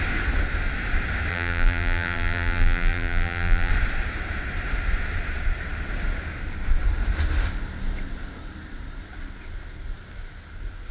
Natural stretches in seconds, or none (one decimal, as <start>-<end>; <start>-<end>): 0.0-1.3; 3.7-10.9